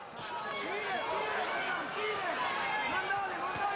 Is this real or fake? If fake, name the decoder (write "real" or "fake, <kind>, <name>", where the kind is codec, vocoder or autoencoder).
real